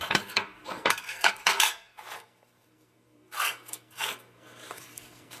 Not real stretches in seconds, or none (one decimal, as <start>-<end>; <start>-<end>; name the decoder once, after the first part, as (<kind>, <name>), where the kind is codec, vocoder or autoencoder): 0.0-5.4 (codec, SNAC)